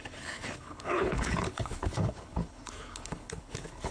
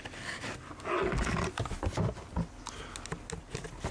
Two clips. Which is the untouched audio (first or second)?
second